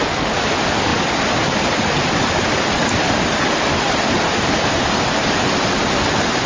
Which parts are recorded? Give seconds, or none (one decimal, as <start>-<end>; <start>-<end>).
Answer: 0.0-0.9; 4.8-6.5